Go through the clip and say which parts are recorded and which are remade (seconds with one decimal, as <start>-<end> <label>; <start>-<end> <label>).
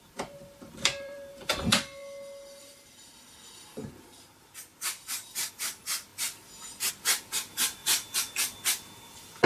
0.0-2.0 remade; 2.0-2.6 recorded; 2.6-6.1 remade; 6.1-6.9 recorded; 6.9-9.5 remade